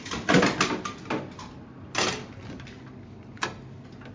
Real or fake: real